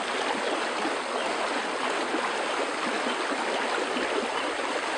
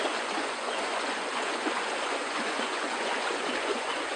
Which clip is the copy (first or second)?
second